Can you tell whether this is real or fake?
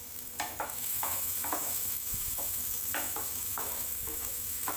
fake